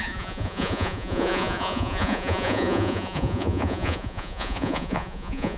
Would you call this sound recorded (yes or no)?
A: no